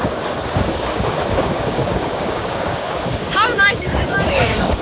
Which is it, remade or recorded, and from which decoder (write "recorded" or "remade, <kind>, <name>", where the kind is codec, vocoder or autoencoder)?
remade, codec, DAC